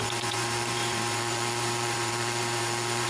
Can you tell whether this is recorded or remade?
remade